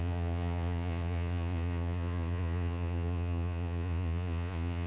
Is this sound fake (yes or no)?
yes